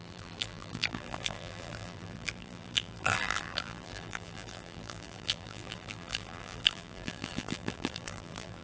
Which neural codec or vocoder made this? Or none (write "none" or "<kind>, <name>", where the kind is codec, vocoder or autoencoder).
vocoder, BigVGAN v2